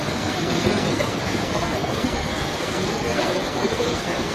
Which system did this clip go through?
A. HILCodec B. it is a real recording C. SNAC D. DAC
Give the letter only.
C